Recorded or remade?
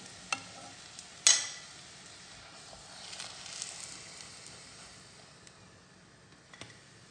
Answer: recorded